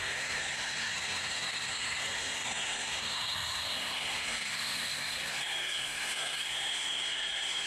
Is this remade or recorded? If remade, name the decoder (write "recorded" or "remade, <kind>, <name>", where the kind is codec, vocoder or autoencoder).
remade, codec, SNAC